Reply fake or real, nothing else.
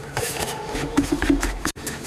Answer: fake